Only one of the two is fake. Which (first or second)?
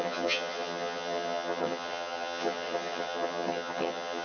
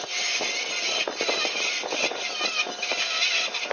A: first